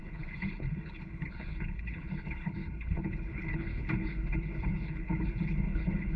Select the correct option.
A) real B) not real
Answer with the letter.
B